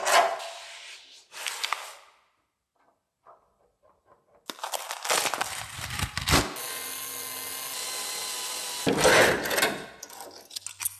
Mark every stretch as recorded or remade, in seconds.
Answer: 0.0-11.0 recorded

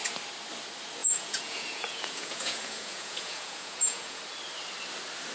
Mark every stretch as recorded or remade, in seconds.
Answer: 0.0-1.0 recorded; 1.0-4.2 remade; 4.2-5.3 recorded

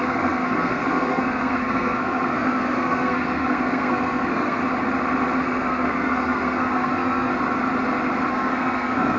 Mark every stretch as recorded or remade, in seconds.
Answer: 0.0-4.6 remade; 4.6-5.4 recorded; 5.4-7.3 remade; 7.3-8.3 recorded; 8.3-9.2 remade

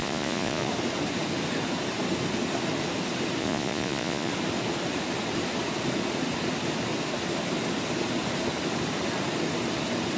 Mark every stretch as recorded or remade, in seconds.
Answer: 0.0-0.7 remade; 0.7-3.4 recorded; 3.4-4.3 remade; 4.3-10.2 recorded

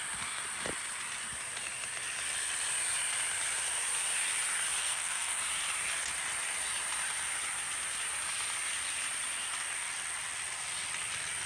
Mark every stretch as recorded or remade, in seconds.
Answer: 0.0-4.8 recorded; 4.8-5.4 remade; 5.4-11.5 recorded